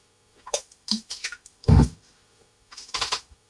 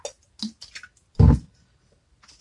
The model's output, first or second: first